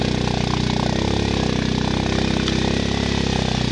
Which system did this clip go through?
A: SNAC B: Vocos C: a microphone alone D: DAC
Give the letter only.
C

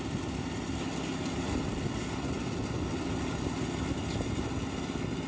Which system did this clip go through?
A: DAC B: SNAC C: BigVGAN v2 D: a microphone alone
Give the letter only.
D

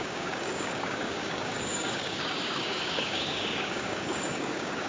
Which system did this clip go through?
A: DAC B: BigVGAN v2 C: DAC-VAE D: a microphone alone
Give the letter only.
A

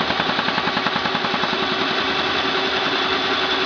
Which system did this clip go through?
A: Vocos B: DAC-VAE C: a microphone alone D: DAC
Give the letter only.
C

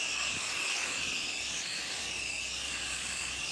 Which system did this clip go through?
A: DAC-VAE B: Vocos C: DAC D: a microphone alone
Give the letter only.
C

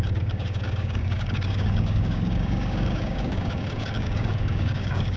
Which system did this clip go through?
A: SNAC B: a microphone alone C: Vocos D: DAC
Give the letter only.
D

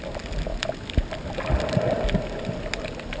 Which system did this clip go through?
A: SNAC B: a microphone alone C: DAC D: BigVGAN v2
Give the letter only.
B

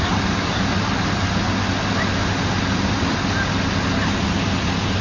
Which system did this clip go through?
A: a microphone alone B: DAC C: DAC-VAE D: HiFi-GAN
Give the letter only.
A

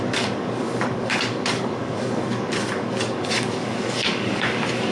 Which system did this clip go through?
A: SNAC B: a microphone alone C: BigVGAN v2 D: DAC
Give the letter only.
D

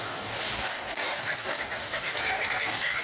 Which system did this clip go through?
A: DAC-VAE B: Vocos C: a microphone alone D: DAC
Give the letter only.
D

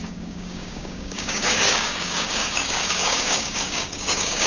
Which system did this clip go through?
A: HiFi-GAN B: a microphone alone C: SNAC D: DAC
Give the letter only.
D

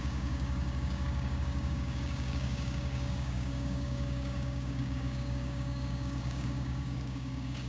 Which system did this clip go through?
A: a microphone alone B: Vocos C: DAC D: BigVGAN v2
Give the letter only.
C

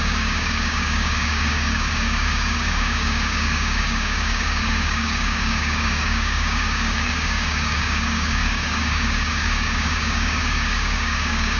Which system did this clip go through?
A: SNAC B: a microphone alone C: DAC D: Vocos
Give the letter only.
C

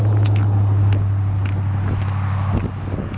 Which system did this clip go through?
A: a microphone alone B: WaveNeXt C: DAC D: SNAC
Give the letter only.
A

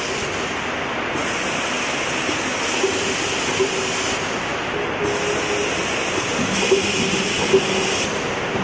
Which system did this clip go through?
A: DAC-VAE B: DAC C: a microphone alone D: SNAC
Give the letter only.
C